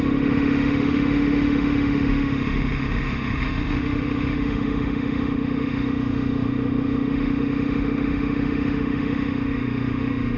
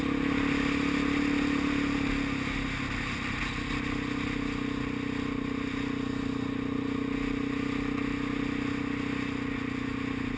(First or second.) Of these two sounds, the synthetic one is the first